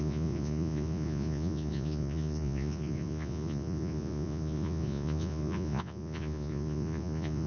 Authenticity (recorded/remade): remade